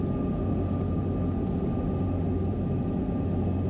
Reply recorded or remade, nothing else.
recorded